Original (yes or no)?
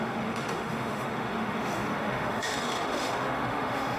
no